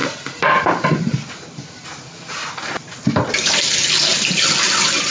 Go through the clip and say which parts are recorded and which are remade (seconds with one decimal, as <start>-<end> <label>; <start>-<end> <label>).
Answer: 0.0-5.1 recorded